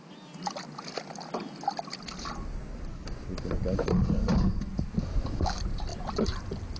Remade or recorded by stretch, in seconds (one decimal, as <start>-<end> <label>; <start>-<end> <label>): 0.0-6.8 recorded